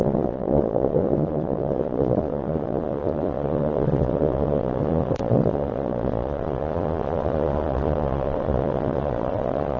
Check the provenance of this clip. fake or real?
fake